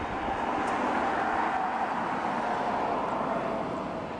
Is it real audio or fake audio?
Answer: real